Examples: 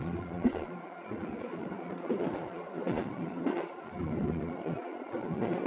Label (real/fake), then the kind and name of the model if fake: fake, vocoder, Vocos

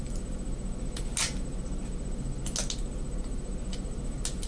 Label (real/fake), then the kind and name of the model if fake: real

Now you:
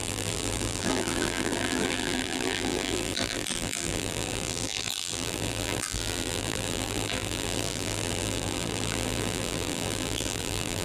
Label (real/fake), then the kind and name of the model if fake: fake, vocoder, BigVGAN v2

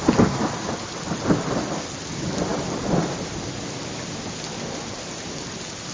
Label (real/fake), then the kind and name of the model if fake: real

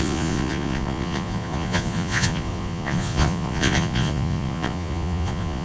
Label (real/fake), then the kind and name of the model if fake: fake, vocoder, Vocos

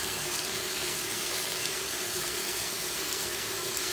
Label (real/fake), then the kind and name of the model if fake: fake, codec, SNAC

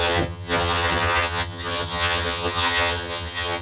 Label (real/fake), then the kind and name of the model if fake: fake, vocoder, HiFi-GAN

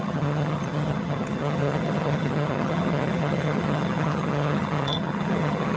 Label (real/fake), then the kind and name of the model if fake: fake, vocoder, HiFi-GAN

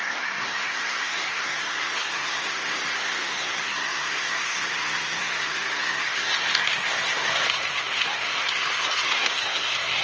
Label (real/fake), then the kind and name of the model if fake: fake, codec, SNAC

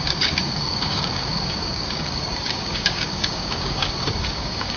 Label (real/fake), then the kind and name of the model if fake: fake, codec, DAC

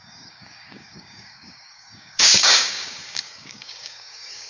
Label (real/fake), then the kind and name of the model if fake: fake, codec, DAC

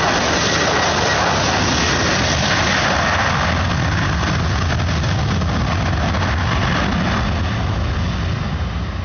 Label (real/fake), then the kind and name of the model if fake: real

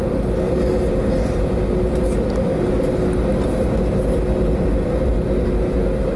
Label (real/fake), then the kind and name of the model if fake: real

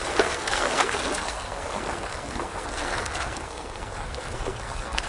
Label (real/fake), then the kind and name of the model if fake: fake, codec, SNAC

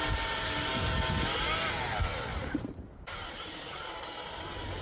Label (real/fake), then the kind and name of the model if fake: real